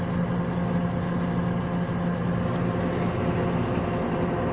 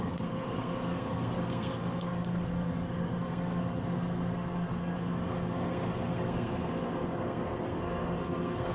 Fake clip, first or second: second